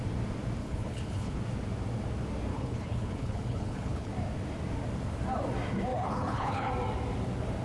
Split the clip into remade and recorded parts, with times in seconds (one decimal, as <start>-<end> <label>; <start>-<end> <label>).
0.0-0.6 recorded; 0.6-1.4 remade; 1.4-2.5 recorded; 2.5-4.1 remade; 4.1-5.9 recorded; 5.9-6.7 remade; 6.7-7.6 recorded